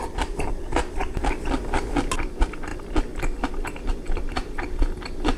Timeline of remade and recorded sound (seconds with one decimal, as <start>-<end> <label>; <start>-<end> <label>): 0.0-5.4 recorded